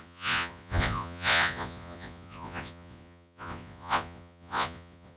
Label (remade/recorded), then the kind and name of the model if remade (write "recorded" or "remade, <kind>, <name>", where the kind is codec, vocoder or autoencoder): remade, vocoder, Vocos